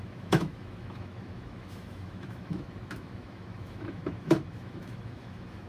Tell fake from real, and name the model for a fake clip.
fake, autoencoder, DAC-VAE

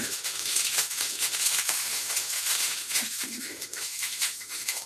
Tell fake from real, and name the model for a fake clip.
fake, autoencoder, DAC-VAE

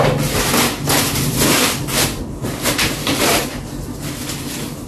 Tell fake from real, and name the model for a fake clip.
real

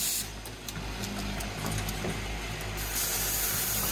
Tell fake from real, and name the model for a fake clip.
real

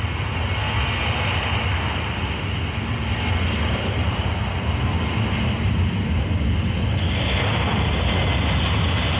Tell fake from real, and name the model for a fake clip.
real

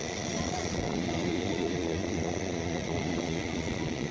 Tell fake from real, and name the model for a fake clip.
fake, vocoder, Vocos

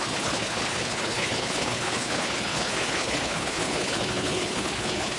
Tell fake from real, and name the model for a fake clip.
fake, codec, HILCodec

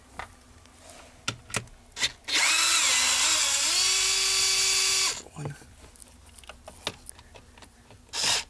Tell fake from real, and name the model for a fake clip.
real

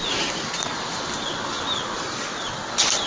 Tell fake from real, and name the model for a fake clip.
real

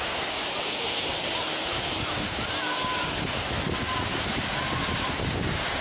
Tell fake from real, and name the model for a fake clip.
real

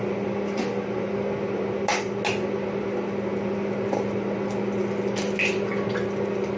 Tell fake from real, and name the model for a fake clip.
real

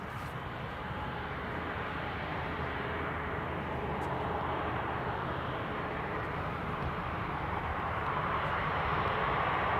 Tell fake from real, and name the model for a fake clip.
fake, vocoder, BigVGAN v2